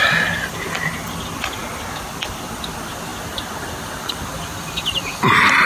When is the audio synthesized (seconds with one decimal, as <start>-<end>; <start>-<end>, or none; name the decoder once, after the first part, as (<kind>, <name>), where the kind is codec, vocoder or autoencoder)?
0.0-1.6 (vocoder, BigVGAN v2); 2.3-5.7